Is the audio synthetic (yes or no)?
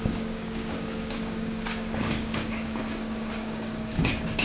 yes